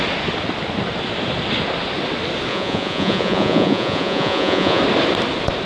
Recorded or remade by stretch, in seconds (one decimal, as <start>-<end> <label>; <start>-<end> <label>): 0.0-2.5 recorded; 2.5-4.8 remade; 4.8-5.7 recorded